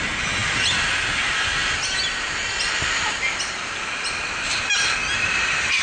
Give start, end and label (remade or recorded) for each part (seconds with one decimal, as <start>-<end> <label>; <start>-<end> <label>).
0.0-5.8 recorded